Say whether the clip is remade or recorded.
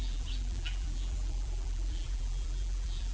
remade